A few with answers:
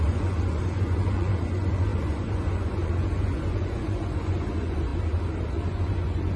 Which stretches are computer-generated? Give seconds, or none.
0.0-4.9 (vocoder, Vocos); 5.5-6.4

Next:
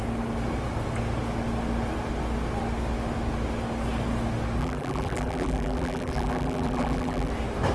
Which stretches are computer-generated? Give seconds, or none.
4.6-7.3 (vocoder, BigVGAN v2)

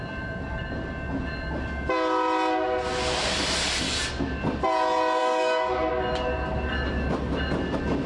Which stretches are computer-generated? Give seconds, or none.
5.2-5.9 (codec, DAC)

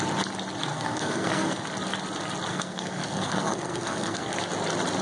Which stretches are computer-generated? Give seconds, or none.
0.7-1.6 (codec, SNAC); 2.5-4.3